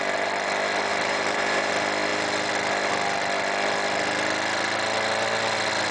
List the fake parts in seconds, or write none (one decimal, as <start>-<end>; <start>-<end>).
0.9-1.7